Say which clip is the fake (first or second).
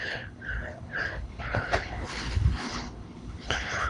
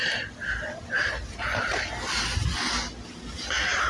first